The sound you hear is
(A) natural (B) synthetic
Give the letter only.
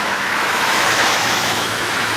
B